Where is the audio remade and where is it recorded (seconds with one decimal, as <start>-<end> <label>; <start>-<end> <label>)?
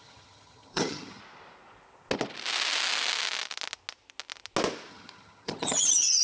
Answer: 0.0-1.2 remade; 1.2-4.9 recorded; 4.9-6.2 remade